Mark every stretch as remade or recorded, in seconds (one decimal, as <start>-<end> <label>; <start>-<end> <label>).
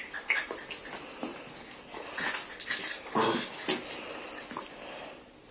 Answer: 0.0-5.5 recorded